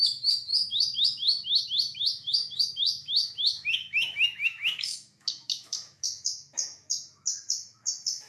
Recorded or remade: remade